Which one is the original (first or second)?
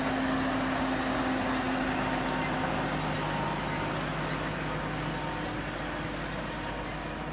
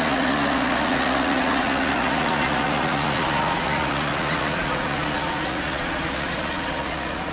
first